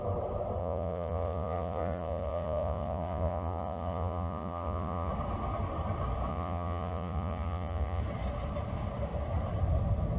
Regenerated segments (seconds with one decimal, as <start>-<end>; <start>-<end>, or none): 0.6-5.1; 6.3-8.0